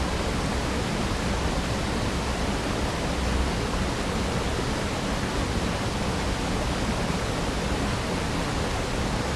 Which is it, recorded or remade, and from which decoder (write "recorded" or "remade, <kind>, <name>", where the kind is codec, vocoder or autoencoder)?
recorded